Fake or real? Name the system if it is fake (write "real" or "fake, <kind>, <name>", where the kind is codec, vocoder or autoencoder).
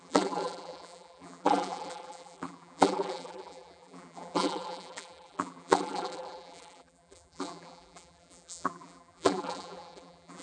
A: fake, vocoder, BigVGAN v2